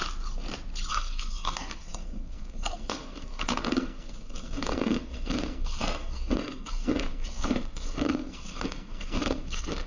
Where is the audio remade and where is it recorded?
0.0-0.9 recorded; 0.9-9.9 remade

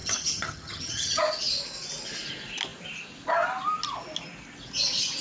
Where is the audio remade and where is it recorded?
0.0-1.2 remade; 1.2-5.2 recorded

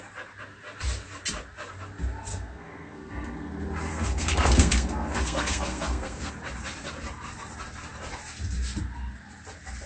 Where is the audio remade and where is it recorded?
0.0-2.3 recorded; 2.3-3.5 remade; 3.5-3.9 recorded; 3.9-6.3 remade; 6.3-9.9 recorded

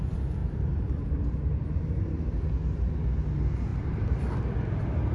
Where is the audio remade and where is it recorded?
0.0-0.4 recorded; 0.4-2.4 remade; 2.4-5.1 recorded

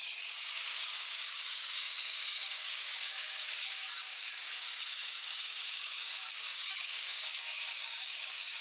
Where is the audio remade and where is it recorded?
0.0-8.6 remade

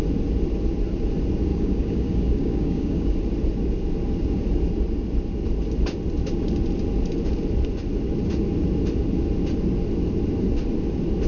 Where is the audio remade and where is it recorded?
0.0-1.5 recorded; 1.5-3.1 remade; 3.1-11.3 recorded